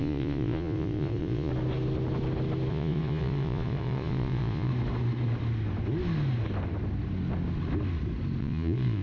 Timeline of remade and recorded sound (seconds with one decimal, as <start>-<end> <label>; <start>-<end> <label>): 0.0-1.5 remade; 1.5-2.7 recorded; 2.7-4.7 remade; 4.7-8.4 recorded; 8.4-9.0 remade